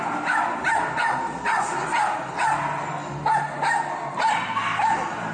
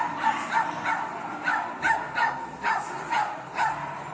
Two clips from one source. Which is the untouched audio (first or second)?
first